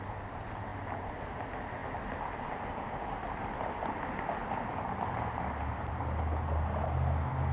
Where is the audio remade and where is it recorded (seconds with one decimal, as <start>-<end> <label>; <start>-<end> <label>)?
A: 0.0-1.8 recorded; 1.8-3.7 remade; 3.7-4.4 recorded; 4.4-6.0 remade; 6.0-7.5 recorded

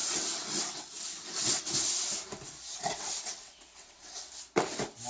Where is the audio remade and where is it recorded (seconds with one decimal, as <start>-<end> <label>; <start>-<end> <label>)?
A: 0.0-1.7 remade; 1.7-2.7 recorded; 2.7-4.3 remade; 4.3-5.1 recorded

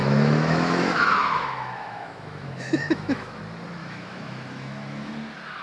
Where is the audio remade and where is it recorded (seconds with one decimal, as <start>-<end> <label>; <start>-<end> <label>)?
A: 0.0-3.4 remade; 3.4-3.8 recorded; 3.8-5.1 remade; 5.1-5.6 recorded

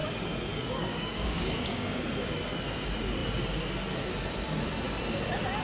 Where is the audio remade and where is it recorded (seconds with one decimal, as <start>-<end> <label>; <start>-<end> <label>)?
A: 0.0-0.9 recorded; 0.9-2.0 remade; 2.0-5.6 recorded

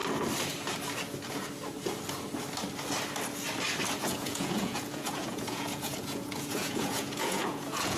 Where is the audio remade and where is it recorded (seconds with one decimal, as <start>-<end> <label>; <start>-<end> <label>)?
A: 0.0-4.0 recorded; 4.0-8.0 remade